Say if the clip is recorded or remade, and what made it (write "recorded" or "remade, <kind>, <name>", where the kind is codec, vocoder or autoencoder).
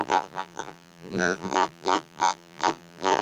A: remade, vocoder, BigVGAN v2